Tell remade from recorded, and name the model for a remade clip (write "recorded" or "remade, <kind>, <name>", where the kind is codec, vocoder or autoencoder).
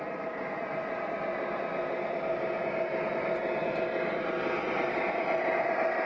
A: recorded